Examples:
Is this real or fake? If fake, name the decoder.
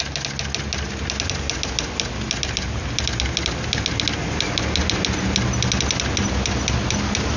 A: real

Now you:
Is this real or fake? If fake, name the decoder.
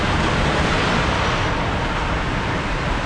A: real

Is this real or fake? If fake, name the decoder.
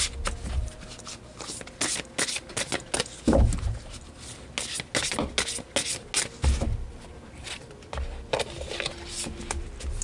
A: real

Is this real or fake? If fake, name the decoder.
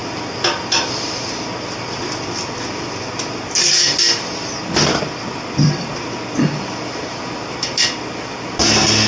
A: real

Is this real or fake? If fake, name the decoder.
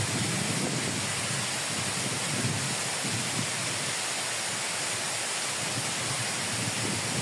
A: real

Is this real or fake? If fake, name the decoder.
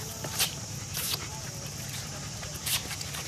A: fake, vocoder, BigVGAN v2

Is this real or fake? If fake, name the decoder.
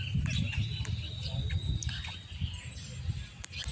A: real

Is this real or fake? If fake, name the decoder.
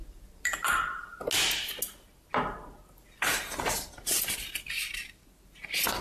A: real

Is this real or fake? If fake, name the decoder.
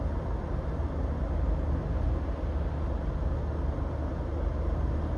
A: real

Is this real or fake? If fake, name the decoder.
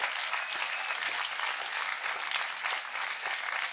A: real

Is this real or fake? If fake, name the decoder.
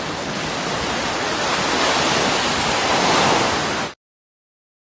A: real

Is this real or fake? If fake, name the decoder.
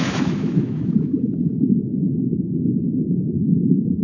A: fake, autoencoder, DAC-VAE